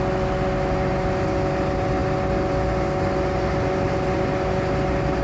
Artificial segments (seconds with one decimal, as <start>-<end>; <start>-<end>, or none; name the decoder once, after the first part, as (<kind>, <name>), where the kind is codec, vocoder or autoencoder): none